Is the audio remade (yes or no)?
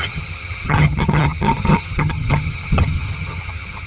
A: yes